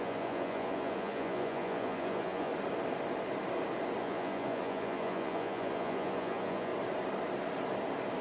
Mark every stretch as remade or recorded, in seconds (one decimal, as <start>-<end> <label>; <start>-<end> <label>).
0.0-2.5 remade; 2.5-4.0 recorded; 4.0-6.7 remade; 6.7-8.2 recorded